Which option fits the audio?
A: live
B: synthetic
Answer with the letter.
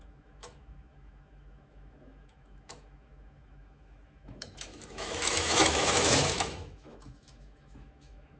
B